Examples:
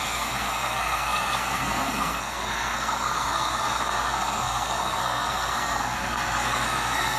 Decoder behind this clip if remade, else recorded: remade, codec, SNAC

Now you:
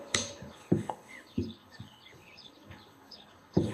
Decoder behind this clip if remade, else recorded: remade, codec, HILCodec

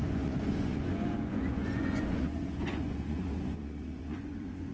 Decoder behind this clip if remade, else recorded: remade, vocoder, Vocos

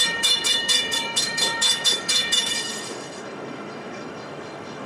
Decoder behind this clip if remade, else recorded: remade, autoencoder, DAC-VAE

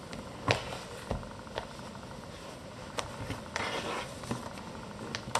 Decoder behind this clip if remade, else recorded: recorded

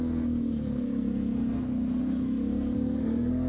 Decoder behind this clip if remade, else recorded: remade, codec, SNAC